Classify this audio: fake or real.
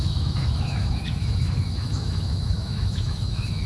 fake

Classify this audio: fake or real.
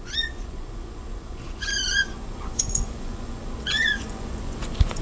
fake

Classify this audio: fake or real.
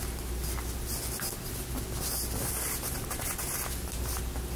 real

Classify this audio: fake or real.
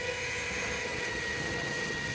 fake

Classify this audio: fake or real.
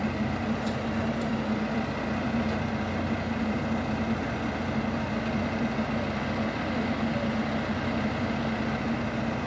real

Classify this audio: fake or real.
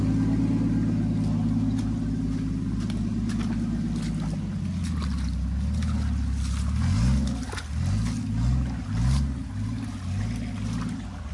real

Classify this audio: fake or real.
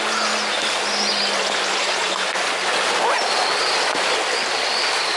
real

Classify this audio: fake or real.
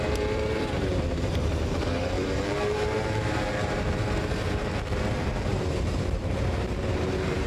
fake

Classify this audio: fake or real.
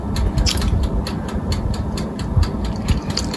real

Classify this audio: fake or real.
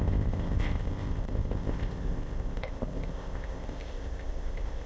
fake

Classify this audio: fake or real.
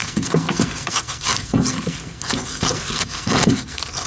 fake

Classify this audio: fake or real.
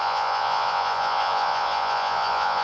fake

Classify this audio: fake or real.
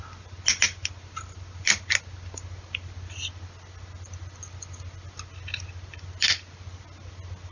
real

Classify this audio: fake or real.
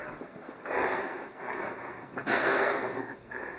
fake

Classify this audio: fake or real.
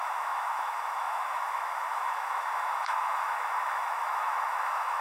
fake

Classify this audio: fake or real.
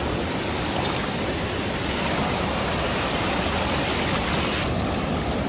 real